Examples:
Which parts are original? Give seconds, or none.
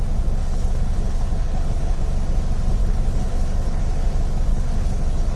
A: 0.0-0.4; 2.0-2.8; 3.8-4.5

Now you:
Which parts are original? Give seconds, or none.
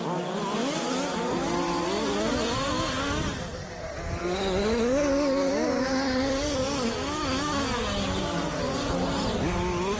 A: 0.0-10.0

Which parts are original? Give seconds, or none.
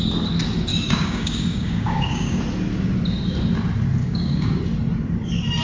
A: 0.0-0.7; 2.4-4.0; 4.6-5.6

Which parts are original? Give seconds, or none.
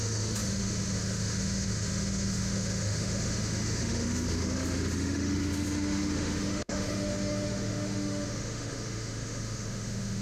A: none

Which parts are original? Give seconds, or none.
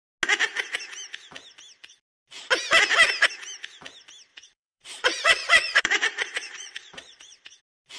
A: 0.0-4.3; 7.6-8.0